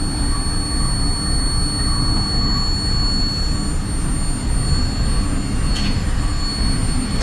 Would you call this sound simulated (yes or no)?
no